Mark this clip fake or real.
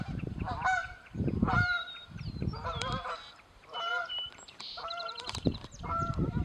fake